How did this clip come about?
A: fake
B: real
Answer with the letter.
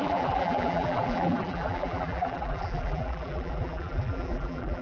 A